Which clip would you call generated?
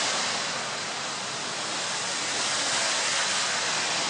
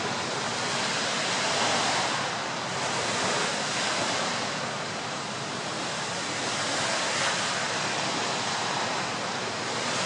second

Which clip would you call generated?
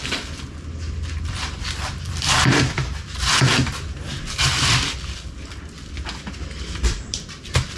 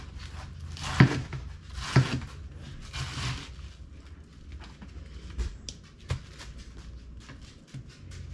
first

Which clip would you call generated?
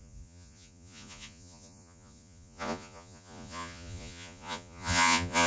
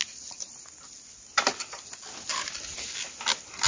first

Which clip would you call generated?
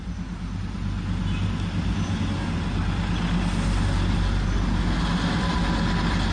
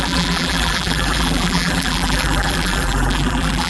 second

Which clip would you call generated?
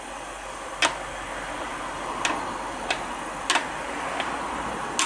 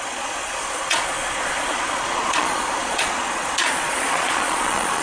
second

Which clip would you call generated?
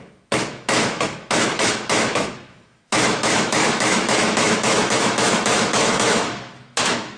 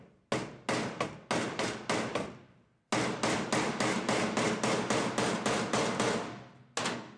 first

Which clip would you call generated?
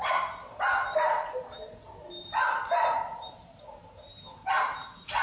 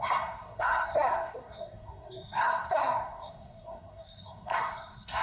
second